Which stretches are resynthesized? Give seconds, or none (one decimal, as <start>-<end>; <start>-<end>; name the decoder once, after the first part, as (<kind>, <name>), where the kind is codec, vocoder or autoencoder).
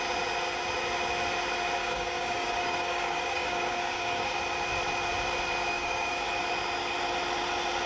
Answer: 1.8-4.4 (codec, DAC); 5.7-6.3